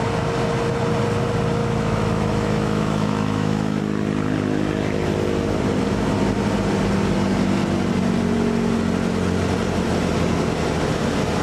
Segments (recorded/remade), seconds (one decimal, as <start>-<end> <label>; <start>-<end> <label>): 0.0-1.6 recorded; 1.6-3.8 remade; 3.8-11.4 recorded